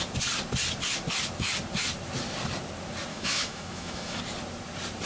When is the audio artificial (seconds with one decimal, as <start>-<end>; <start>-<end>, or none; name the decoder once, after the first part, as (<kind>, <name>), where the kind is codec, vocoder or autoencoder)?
3.1-4.2 (autoencoder, DAC-VAE)